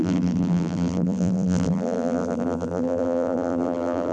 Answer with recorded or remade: remade